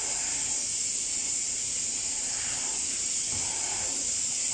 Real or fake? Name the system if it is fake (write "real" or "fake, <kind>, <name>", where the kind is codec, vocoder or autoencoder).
real